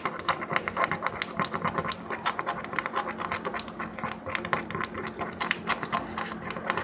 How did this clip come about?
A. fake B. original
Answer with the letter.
B